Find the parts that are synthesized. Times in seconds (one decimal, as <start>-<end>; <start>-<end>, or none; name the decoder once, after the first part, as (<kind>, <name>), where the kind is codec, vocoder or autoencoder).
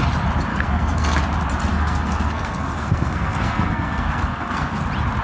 0.5-1.2 (codec, SNAC); 1.7-4.8